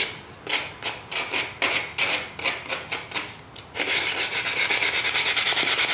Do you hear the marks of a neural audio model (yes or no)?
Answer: no